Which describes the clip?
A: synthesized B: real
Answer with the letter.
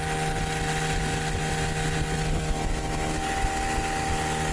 B